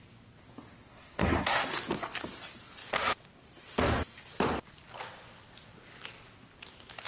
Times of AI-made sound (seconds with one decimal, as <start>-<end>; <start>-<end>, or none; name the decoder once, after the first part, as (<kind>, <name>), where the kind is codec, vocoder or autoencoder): 0.9-1.7 (codec, SNAC)